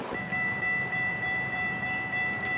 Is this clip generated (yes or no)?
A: yes